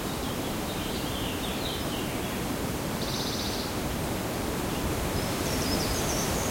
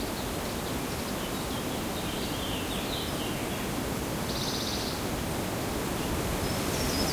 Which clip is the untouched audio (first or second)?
second